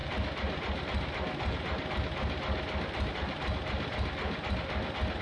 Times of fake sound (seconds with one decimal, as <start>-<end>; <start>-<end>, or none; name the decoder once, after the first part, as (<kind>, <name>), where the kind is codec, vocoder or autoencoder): none